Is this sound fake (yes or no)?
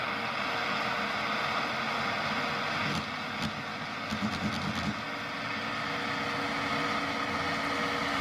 no